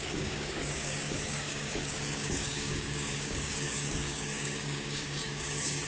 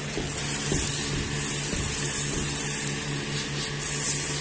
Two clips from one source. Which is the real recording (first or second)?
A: second